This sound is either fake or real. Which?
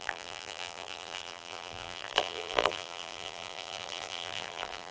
fake